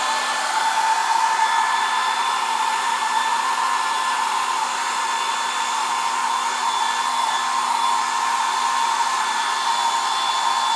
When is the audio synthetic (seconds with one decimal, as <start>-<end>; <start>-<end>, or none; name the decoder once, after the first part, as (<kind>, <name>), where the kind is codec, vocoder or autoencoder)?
1.0-3.6 (vocoder, BigVGAN v2)